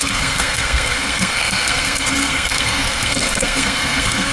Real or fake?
fake